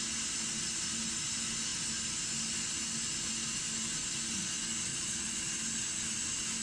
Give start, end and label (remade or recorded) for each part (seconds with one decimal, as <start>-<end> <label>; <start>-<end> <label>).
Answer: 0.0-4.9 recorded; 4.9-5.4 remade; 5.4-6.6 recorded